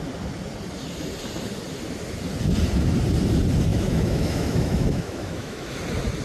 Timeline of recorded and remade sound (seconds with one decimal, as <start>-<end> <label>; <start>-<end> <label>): 0.0-3.7 recorded; 3.7-5.7 remade; 5.7-6.2 recorded